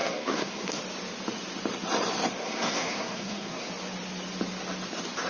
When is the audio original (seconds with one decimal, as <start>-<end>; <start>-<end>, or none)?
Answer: 0.8-2.4; 3.7-5.3